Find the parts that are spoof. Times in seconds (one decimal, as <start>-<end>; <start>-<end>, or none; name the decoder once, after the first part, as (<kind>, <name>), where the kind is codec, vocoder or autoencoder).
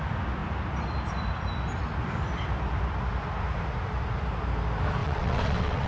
5.0-5.9 (vocoder, WaveNeXt)